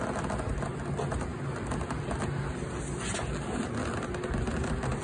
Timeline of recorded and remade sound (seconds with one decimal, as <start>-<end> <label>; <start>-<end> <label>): 0.0-5.0 recorded